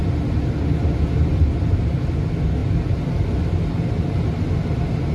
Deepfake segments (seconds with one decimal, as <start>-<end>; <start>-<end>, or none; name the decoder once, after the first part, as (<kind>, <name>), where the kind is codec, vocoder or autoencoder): 0.0-0.9 (vocoder, BigVGAN v2)

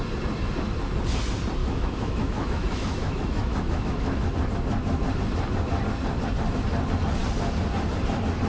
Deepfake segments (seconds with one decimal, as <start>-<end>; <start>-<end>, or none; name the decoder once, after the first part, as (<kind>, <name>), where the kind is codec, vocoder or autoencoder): 1.6-4.3 (autoencoder, DAC-VAE)

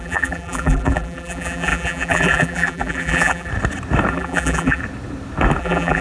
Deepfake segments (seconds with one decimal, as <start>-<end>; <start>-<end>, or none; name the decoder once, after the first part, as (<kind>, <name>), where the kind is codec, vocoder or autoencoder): 0.0-3.5 (vocoder, BigVGAN v2); 4.1-4.8; 5.6-6.0

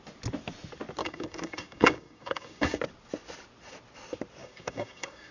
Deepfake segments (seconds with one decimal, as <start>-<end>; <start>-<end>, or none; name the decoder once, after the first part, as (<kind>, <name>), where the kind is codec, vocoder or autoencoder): 1.0-2.8 (codec, DAC); 4.4-5.3

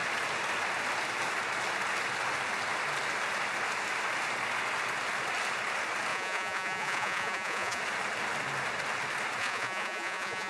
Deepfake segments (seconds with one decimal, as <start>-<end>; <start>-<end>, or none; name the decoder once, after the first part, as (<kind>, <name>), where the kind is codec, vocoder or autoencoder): 6.1-7.8 (vocoder, Vocos); 9.4-10.5